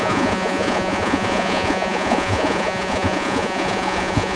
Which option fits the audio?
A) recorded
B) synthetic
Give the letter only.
B